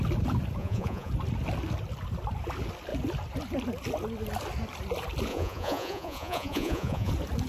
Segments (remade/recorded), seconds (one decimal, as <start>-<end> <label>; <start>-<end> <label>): 0.0-0.6 recorded; 0.6-1.1 remade; 1.1-5.3 recorded; 5.3-7.1 remade; 7.1-7.5 recorded